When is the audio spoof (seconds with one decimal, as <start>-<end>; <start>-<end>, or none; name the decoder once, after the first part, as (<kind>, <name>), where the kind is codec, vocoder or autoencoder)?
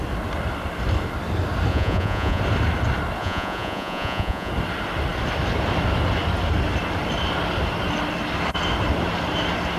1.7-2.4 (vocoder, Vocos); 3.2-4.5